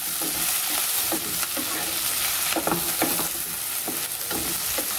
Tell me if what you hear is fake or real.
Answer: real